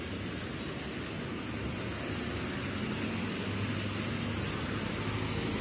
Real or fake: real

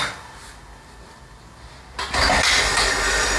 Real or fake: real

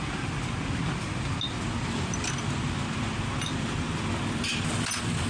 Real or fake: real